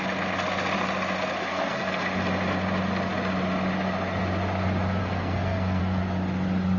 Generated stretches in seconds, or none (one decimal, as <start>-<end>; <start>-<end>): 1.4-2.0; 5.0-5.8